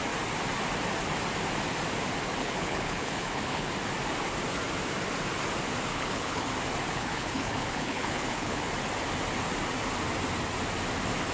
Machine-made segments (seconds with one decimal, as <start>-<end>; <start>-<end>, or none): 2.4-3.7; 5.9-6.5; 6.9-8.7